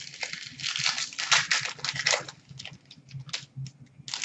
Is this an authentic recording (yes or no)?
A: yes